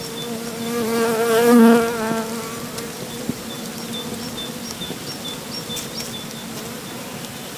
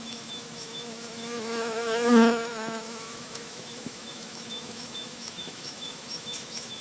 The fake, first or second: second